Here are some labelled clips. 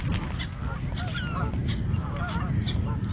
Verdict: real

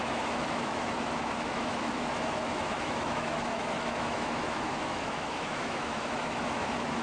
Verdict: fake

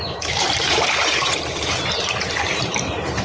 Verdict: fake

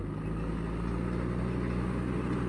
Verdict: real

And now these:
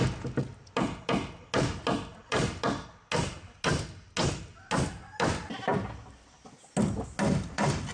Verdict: real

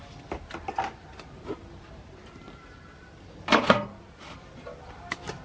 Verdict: real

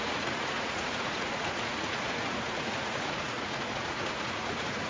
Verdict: fake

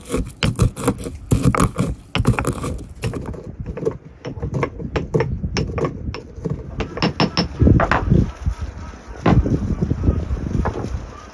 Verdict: real